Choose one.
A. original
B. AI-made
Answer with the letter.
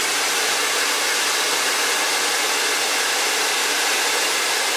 A